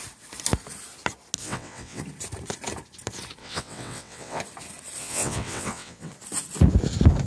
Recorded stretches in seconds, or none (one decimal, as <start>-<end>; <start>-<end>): 0.0-1.4; 2.0-3.4; 4.4-5.0; 6.1-7.3